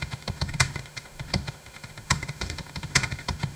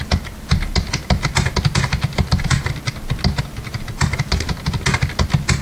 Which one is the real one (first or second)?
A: second